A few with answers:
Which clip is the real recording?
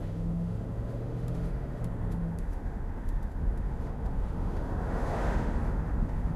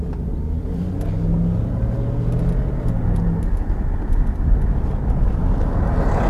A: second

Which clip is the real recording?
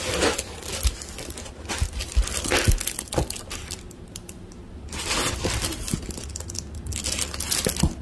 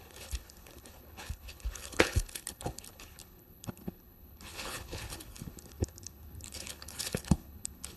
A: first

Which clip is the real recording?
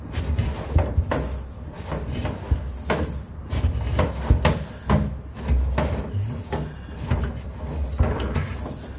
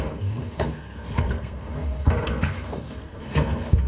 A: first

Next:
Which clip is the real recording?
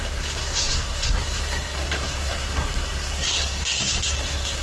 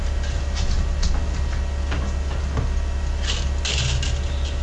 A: second